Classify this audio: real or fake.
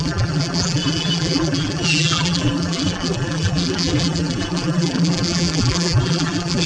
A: fake